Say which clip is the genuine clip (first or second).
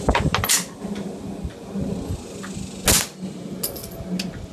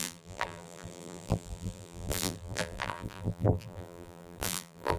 first